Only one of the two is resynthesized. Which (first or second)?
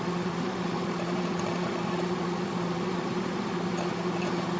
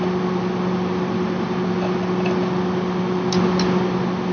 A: first